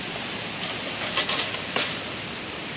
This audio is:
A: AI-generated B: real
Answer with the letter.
B